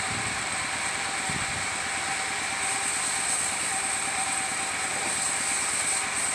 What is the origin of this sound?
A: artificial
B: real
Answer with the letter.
B